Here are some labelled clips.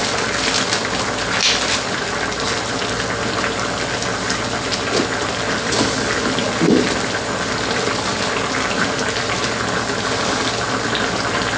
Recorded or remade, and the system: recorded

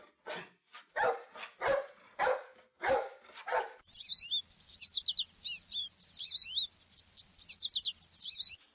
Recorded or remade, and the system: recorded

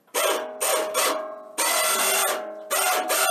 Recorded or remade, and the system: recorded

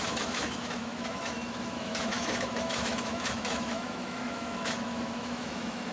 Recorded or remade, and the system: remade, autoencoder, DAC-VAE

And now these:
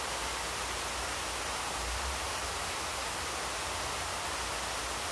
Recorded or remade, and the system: recorded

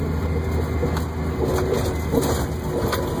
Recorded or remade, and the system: recorded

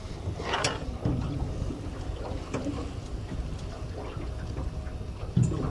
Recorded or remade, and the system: recorded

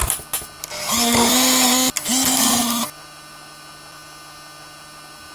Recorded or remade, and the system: recorded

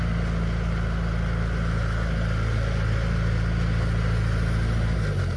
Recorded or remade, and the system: recorded